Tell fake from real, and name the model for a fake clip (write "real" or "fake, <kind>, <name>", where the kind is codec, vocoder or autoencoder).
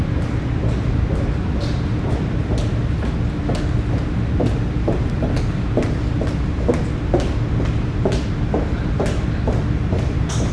real